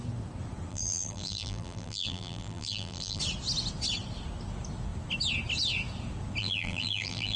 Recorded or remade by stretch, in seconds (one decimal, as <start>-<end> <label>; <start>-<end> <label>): 0.0-0.7 recorded; 0.7-3.2 remade; 3.2-6.4 recorded; 6.4-7.4 remade